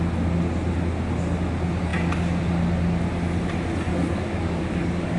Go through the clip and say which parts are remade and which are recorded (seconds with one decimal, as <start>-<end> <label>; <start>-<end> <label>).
0.0-3.9 recorded; 3.9-5.2 remade